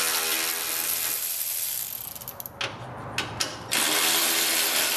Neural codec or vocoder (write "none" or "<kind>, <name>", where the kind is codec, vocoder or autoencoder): none